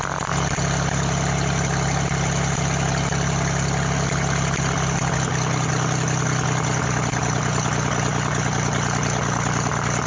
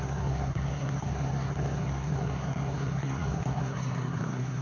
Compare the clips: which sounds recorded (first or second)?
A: first